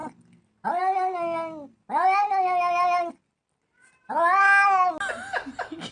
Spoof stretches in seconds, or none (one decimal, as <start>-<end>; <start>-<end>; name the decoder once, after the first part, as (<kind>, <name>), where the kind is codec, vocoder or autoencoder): none